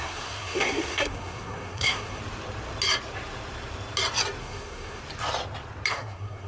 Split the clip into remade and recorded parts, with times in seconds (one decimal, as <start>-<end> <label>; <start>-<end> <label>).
0.0-2.2 remade; 2.2-4.4 recorded; 4.4-5.0 remade; 5.0-5.9 recorded; 5.9-6.5 remade